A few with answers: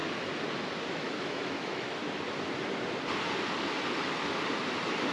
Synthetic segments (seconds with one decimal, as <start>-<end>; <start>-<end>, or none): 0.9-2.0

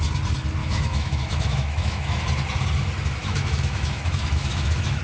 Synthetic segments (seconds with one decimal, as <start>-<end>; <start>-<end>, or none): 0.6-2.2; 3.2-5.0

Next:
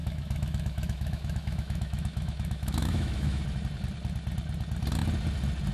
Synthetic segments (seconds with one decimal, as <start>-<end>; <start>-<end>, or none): 0.0-3.4